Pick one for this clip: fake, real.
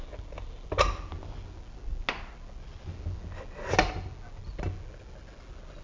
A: real